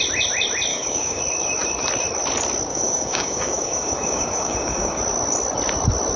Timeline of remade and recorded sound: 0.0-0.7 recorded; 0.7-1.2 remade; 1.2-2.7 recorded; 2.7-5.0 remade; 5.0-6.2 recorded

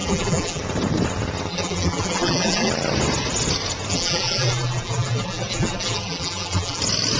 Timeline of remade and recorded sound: 0.0-0.6 remade; 0.6-1.5 recorded; 1.5-2.7 remade; 2.7-3.9 recorded; 3.9-6.8 remade; 6.8-7.2 recorded